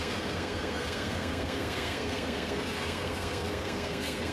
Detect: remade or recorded remade